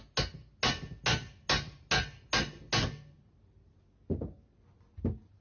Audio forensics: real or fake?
real